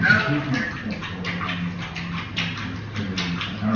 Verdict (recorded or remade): recorded